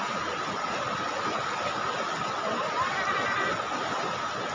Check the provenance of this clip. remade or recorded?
recorded